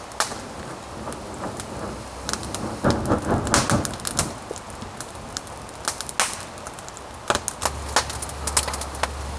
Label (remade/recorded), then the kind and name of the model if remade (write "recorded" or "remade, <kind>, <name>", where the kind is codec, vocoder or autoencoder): recorded